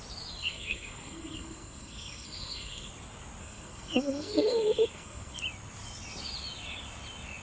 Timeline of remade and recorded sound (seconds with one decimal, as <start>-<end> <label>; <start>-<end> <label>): 0.0-0.4 recorded; 0.4-2.9 remade; 2.9-3.4 recorded; 3.4-5.4 remade; 5.4-7.4 recorded